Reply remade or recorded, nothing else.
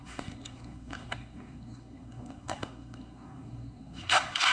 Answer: remade